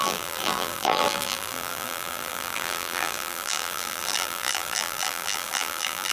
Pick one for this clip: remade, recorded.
remade